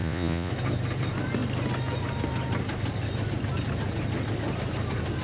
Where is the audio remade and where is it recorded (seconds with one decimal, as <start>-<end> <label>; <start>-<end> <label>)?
0.0-0.5 remade; 0.5-5.2 recorded